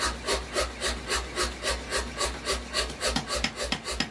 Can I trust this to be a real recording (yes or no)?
yes